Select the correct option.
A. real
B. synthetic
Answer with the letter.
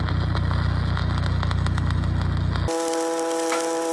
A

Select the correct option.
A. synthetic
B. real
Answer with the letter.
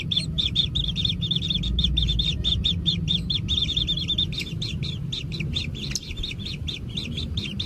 B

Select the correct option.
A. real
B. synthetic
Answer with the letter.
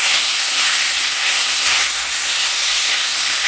B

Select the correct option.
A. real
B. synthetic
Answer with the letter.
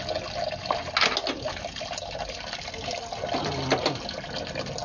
A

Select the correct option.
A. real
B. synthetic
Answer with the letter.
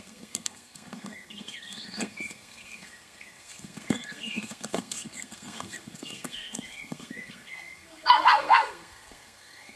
B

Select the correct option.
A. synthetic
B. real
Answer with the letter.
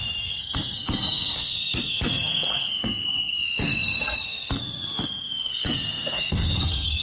A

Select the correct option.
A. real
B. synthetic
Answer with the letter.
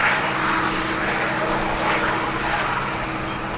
A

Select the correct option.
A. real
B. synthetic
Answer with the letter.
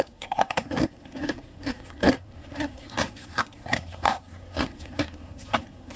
B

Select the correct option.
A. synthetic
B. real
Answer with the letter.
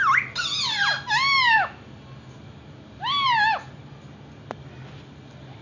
B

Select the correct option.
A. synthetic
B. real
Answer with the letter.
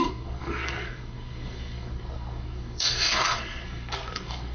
A